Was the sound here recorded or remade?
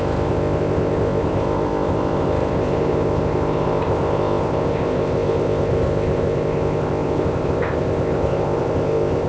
remade